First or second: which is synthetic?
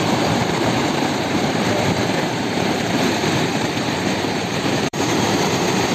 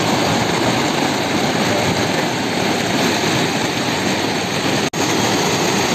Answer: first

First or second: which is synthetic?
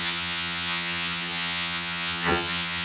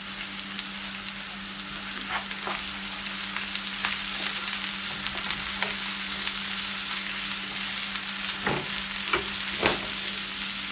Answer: first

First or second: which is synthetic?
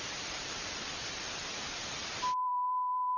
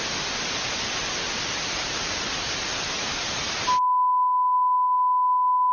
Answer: first